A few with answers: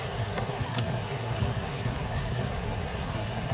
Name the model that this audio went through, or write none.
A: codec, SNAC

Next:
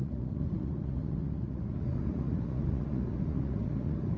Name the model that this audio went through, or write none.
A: vocoder, Vocos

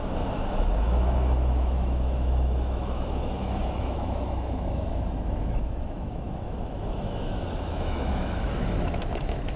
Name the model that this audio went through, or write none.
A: autoencoder, DAC-VAE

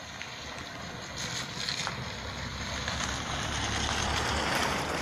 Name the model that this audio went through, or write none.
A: none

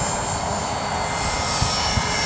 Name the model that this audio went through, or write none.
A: none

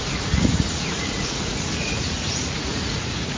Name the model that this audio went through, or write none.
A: vocoder, Vocos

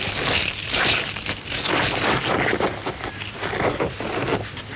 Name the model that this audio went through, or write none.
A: none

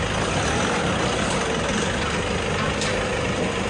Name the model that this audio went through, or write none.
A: none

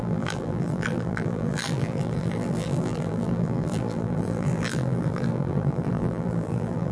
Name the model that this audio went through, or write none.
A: vocoder, BigVGAN v2